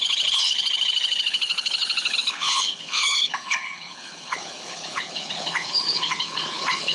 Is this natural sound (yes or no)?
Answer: no